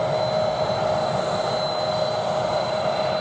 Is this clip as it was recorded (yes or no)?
yes